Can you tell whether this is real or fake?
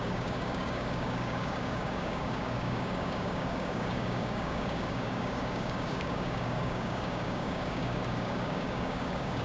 fake